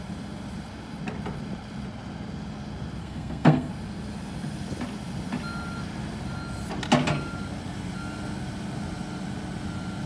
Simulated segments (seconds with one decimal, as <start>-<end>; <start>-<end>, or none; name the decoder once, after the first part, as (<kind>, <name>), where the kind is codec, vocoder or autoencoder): 3.0-3.7 (codec, SNAC)